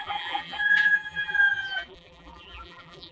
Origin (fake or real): fake